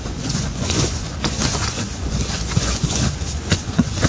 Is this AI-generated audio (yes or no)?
yes